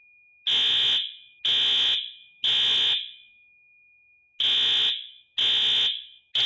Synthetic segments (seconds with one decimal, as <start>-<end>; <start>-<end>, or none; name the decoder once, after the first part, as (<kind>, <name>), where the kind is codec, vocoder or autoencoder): none